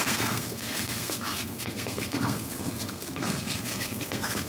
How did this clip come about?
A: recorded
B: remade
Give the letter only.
B